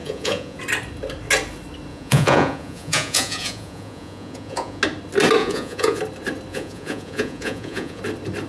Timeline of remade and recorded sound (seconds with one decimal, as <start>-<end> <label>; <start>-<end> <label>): 0.0-0.6 remade; 0.6-1.9 recorded; 1.9-4.8 remade; 4.8-5.4 recorded; 5.4-6.0 remade; 6.0-6.5 recorded; 6.5-8.0 remade; 8.0-8.5 recorded